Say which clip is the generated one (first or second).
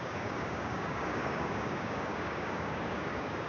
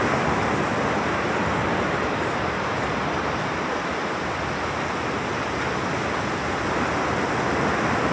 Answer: first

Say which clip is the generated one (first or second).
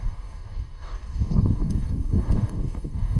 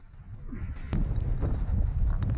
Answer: first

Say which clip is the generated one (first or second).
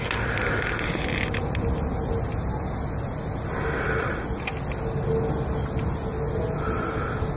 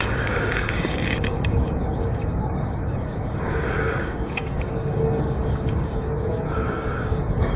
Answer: second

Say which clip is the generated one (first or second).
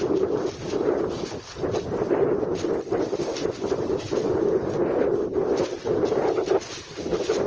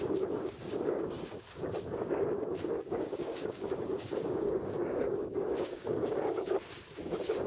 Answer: second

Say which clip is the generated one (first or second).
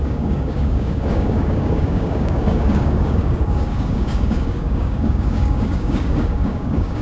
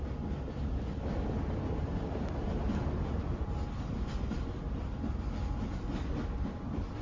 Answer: first